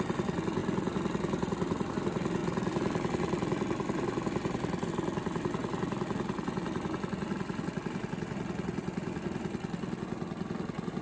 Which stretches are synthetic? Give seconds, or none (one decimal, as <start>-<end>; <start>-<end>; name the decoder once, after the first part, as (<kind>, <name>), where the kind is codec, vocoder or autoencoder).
0.6-1.9 (vocoder, BigVGAN v2); 2.4-4.9; 5.6-8.0